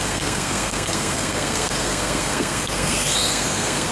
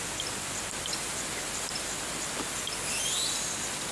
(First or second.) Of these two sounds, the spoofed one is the first